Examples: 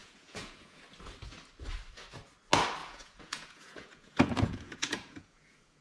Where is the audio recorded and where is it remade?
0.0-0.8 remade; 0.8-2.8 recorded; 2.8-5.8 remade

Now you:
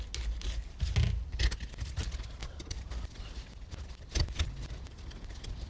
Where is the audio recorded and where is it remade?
0.0-2.4 recorded; 2.4-3.1 remade; 3.1-5.7 recorded